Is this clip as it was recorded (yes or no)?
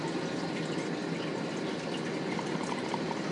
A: yes